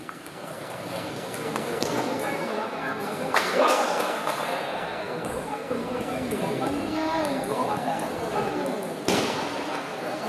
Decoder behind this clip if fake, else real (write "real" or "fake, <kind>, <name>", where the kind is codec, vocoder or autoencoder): fake, codec, SNAC